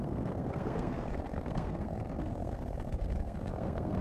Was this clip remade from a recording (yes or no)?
yes